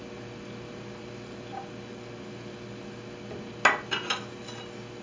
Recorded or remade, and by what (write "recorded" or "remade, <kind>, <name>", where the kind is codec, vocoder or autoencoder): recorded